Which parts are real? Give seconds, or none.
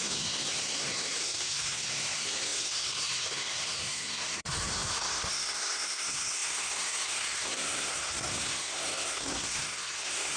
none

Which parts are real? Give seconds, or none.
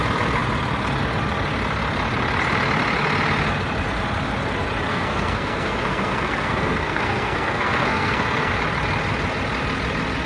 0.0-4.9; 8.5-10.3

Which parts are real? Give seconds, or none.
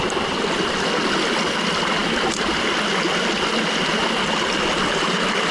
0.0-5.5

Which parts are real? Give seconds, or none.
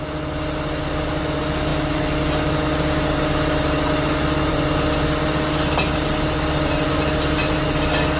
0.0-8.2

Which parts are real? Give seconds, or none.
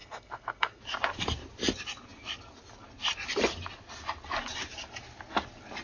0.8-5.8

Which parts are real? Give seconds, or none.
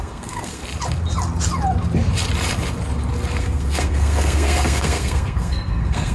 0.6-3.4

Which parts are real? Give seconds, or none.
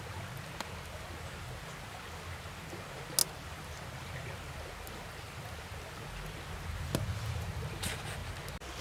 0.0-8.8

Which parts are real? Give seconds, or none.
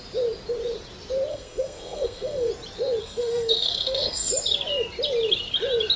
0.0-1.3; 2.5-3.0; 4.3-6.0